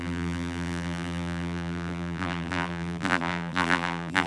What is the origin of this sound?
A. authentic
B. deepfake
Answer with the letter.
B